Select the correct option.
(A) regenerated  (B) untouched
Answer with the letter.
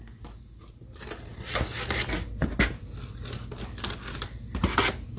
B